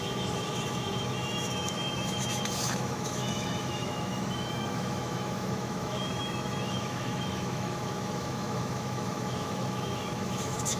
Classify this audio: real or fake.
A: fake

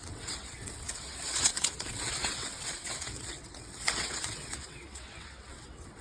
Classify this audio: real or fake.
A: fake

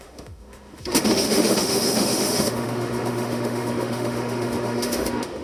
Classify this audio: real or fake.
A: fake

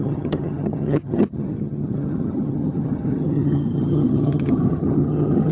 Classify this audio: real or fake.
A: fake